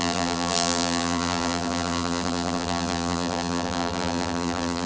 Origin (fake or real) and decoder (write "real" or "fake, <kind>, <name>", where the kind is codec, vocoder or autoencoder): fake, vocoder, BigVGAN v2